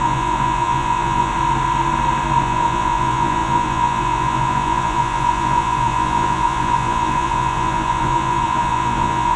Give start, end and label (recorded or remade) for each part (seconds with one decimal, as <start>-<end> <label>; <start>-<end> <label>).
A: 0.0-1.3 remade; 1.3-2.4 recorded; 2.4-9.4 remade